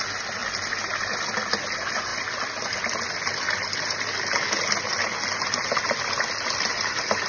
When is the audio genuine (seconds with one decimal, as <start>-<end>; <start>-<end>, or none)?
0.0-7.3